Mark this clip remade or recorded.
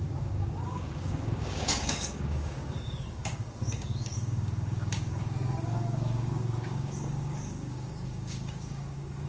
remade